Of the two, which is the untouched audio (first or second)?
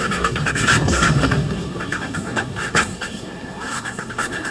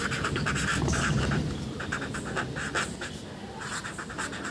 second